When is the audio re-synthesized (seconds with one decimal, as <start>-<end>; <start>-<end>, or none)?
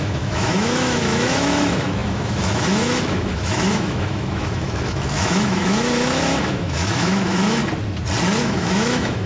0.0-7.6; 8.4-9.3